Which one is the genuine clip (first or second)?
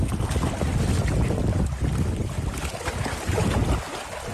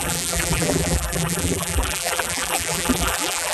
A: first